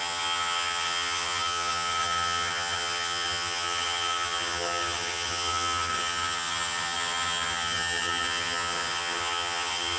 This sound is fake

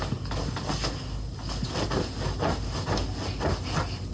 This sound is real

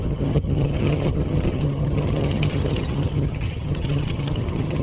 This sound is fake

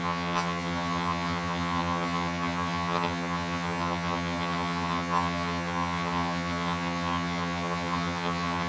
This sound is fake